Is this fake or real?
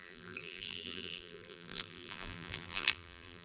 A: fake